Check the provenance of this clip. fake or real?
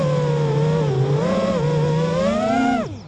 real